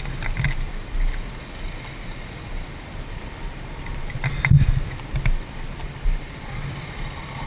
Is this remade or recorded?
recorded